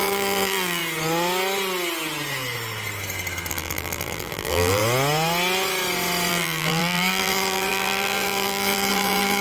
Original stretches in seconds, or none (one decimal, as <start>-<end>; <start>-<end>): 0.8-3.5; 4.8-6.3